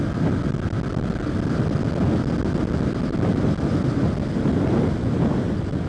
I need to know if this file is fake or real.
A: real